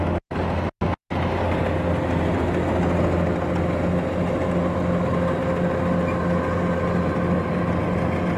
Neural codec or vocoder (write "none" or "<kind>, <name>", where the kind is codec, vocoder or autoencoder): none